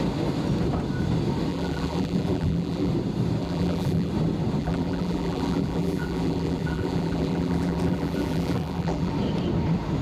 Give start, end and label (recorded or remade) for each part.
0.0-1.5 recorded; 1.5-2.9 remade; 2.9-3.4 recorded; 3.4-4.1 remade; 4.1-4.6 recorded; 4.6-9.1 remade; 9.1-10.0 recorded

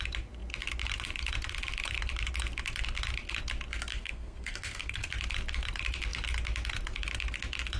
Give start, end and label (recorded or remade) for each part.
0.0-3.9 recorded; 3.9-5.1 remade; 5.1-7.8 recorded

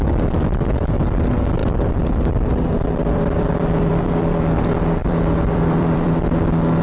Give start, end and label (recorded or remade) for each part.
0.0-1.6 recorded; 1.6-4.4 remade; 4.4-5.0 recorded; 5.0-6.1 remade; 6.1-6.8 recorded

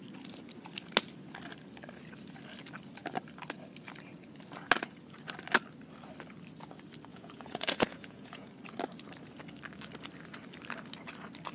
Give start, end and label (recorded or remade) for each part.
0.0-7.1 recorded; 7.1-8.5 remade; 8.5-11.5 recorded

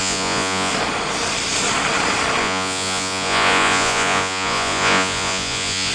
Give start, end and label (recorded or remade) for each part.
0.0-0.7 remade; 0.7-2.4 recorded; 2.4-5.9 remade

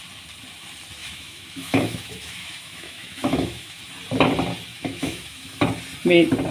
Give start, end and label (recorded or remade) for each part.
0.0-1.0 recorded; 1.0-3.8 remade; 3.8-4.7 recorded; 4.7-5.6 remade; 5.6-6.5 recorded

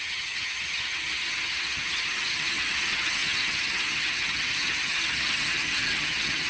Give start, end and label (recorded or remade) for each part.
0.0-6.5 remade